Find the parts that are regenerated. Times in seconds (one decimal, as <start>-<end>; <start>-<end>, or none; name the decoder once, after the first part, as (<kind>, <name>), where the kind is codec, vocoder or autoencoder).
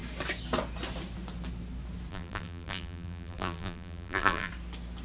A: 2.1-4.5 (vocoder, BigVGAN v2)